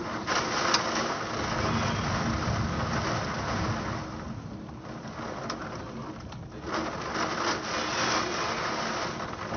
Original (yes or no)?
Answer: yes